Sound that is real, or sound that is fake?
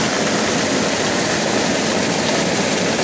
real